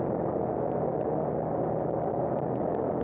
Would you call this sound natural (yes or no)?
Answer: yes